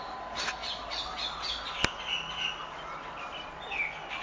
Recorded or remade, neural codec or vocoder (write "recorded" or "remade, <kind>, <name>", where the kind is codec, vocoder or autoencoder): recorded